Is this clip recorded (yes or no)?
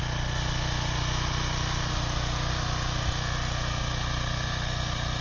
yes